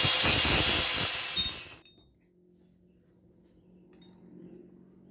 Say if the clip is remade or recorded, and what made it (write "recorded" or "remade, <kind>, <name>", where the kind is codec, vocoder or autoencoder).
recorded